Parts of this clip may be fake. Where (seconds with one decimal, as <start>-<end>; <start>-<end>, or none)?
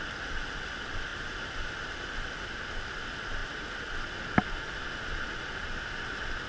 none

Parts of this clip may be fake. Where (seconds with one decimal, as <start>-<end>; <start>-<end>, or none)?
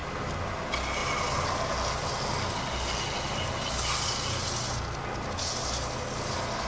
none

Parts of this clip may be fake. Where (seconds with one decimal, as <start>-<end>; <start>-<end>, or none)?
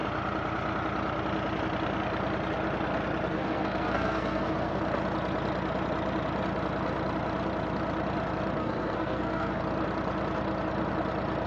3.3-4.8; 8.6-9.6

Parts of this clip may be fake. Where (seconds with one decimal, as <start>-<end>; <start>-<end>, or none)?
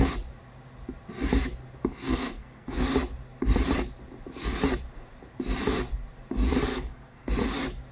1.9-2.9; 6.7-7.3